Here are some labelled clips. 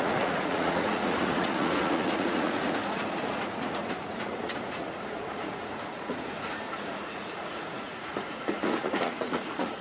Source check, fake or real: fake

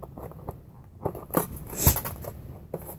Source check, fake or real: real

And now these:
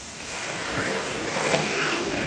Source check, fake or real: fake